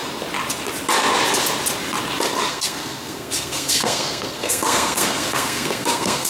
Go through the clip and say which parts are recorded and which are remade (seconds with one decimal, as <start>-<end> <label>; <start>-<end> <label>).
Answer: 0.0-2.5 recorded; 2.5-6.3 remade